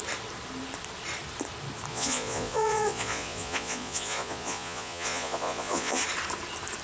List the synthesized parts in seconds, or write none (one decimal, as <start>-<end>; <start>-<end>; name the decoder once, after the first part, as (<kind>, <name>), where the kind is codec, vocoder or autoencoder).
1.9-6.0 (vocoder, Vocos)

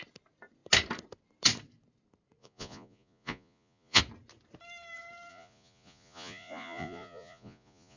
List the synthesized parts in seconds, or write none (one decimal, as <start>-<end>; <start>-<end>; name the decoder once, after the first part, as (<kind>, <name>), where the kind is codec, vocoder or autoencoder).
2.4-4.0 (vocoder, Vocos); 5.3-8.0